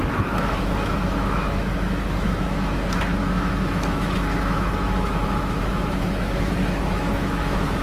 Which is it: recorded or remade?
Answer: remade